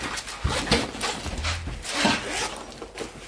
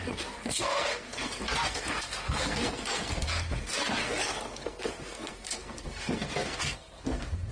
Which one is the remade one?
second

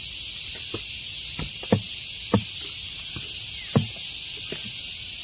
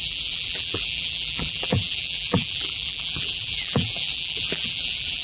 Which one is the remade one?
second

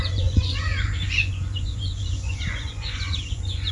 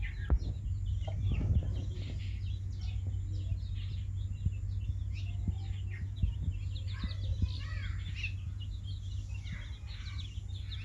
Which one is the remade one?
first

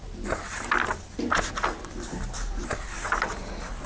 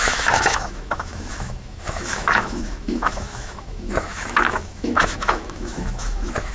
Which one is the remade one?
second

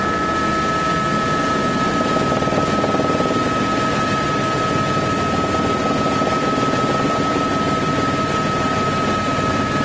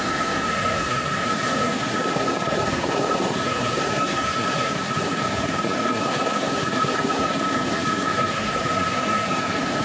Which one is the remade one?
second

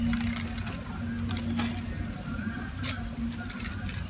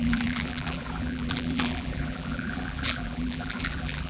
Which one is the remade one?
second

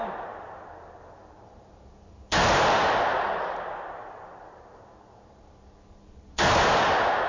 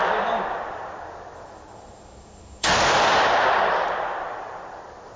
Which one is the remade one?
second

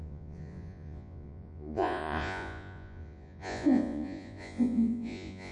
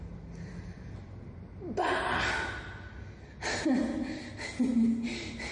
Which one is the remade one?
first